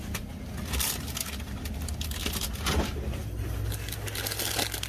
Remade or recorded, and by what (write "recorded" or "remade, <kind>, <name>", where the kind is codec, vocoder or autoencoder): recorded